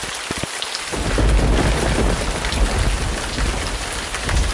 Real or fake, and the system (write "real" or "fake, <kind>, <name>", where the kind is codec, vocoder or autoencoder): real